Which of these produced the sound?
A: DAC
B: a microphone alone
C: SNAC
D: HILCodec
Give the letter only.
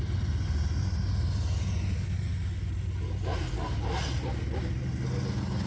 B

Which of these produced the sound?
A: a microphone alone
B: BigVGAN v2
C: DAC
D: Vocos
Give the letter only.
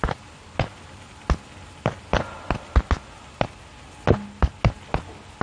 A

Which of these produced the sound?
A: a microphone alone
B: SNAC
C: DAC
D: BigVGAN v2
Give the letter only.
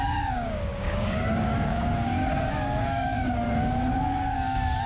C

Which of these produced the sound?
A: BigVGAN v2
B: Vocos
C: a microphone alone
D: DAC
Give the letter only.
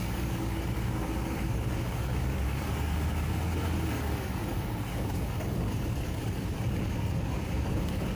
D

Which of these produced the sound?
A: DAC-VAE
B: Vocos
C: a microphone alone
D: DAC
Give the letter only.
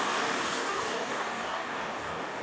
D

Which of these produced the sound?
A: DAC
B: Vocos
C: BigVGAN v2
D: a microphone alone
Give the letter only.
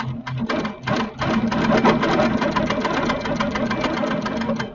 D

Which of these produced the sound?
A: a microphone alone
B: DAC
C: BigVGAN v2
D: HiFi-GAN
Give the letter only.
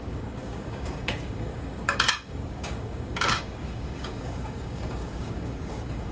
B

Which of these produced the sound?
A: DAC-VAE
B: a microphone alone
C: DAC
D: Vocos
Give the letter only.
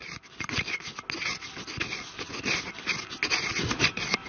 B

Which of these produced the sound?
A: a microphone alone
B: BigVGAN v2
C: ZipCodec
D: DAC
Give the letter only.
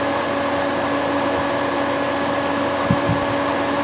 A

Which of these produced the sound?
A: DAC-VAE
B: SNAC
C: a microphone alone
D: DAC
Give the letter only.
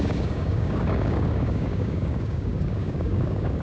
D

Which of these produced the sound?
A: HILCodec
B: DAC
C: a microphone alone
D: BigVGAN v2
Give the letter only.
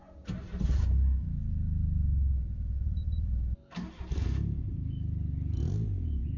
C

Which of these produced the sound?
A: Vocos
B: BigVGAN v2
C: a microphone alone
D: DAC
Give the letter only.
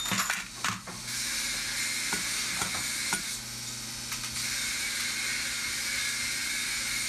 C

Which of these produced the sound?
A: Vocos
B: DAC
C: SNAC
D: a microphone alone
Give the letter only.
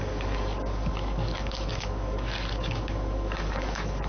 B